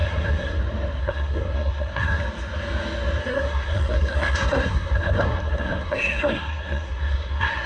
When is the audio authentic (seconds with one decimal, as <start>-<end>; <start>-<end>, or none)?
0.6-1.0; 2.2-3.2